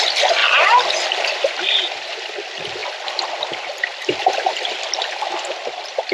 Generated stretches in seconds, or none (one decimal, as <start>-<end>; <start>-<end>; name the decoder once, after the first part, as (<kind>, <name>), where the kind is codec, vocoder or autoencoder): 0.4-1.8 (vocoder, BigVGAN v2); 2.8-4.3